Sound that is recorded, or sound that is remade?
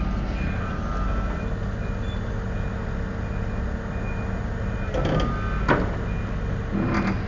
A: recorded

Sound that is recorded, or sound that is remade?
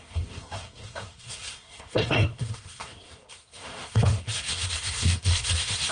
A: remade